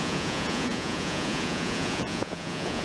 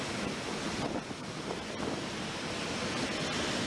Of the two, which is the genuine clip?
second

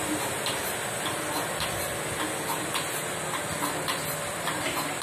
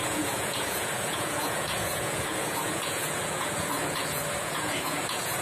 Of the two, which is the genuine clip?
first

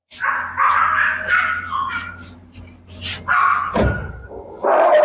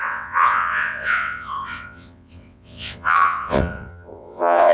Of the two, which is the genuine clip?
first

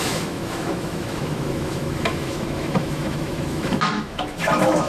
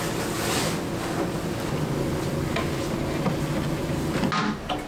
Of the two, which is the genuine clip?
second